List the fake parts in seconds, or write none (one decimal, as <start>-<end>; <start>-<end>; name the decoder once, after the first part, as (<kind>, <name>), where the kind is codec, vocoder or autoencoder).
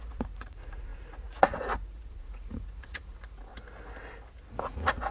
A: 0.0-3.5 (vocoder, Vocos); 4.6-5.1